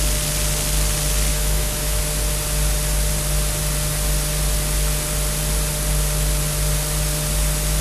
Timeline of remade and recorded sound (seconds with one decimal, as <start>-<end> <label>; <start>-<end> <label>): 0.0-1.3 recorded; 1.3-2.0 remade; 2.0-7.8 recorded